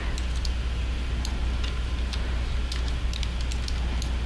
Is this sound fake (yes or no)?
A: no